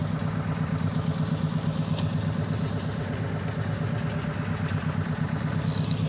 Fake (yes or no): no